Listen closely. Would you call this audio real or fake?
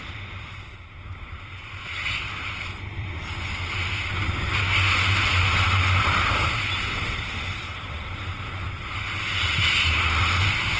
real